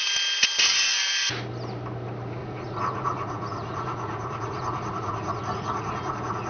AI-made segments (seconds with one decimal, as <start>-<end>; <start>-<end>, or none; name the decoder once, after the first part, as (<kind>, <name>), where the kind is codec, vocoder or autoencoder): 2.4-6.5 (vocoder, Vocos)